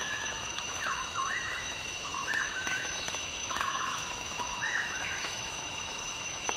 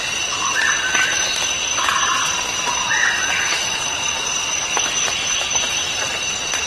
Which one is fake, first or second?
first